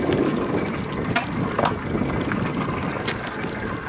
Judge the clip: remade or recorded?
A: recorded